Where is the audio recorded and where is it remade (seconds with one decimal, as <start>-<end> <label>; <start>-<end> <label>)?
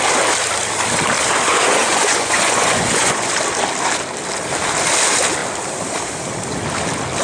0.0-1.5 recorded; 1.5-3.3 remade; 3.3-7.2 recorded